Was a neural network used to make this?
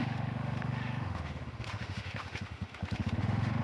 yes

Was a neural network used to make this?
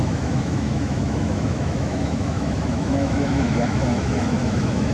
yes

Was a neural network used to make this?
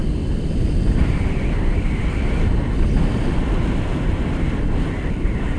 no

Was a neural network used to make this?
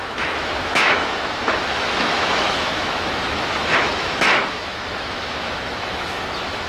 yes